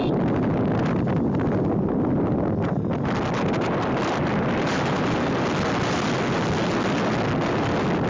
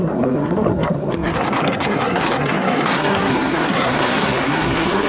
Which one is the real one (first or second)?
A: first